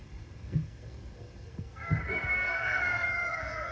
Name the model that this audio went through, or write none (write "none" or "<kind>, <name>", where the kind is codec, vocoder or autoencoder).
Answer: codec, SNAC